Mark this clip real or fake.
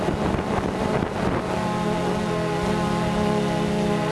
real